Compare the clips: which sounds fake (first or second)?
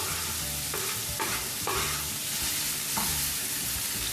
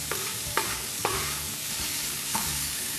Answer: second